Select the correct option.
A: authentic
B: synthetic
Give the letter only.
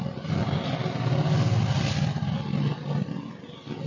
A